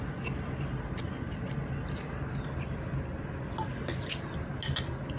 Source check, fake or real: real